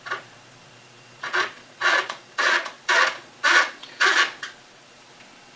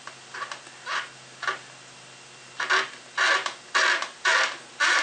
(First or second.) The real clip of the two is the second